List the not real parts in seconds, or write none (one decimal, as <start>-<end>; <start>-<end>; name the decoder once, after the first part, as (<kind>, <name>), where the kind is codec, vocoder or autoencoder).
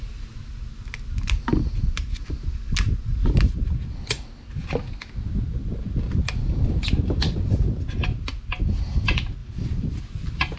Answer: 9.4-10.0 (vocoder, BigVGAN v2)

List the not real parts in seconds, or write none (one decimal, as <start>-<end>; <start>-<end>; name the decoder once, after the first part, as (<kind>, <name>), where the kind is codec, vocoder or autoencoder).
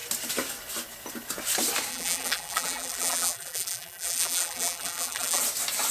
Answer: 1.9-5.4 (vocoder, BigVGAN v2)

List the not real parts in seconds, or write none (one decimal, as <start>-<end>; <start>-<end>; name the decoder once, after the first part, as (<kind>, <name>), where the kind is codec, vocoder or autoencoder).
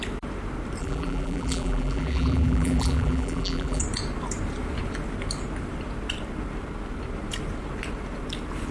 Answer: 0.8-3.8 (vocoder, BigVGAN v2)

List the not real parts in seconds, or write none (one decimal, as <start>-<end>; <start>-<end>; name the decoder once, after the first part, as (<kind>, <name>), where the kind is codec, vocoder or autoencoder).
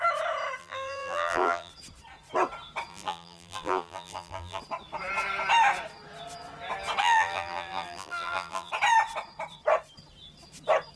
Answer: 0.6-1.7 (vocoder, BigVGAN v2); 2.9-4.6; 7.0-8.7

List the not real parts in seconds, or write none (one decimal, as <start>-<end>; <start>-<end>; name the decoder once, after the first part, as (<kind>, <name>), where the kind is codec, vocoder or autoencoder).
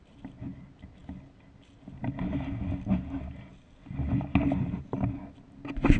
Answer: 3.5-4.3 (vocoder, BigVGAN v2)